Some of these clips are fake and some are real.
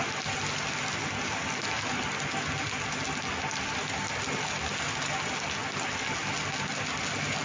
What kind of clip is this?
real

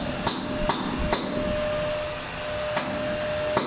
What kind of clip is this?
real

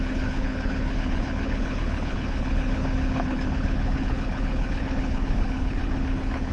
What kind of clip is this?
fake